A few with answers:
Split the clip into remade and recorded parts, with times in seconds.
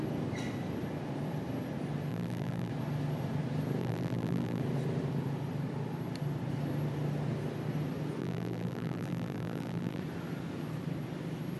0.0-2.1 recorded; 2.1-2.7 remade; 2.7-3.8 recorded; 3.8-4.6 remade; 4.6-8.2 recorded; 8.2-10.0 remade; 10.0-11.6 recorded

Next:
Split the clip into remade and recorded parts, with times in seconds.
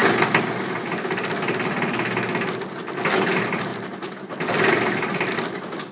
0.0-5.9 recorded